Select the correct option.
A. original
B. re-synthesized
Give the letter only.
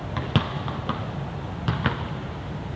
A